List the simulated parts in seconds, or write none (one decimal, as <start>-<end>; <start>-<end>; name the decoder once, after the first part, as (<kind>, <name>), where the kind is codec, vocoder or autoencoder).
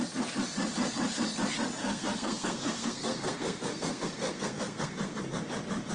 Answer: 1.8-5.2 (codec, SNAC)